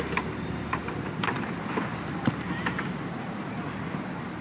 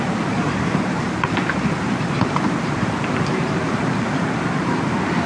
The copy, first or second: second